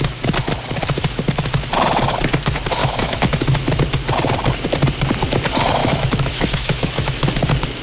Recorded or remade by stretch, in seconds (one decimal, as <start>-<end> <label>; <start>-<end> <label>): 0.0-2.8 recorded; 2.8-3.8 remade; 3.8-5.8 recorded; 5.8-7.3 remade; 7.3-7.8 recorded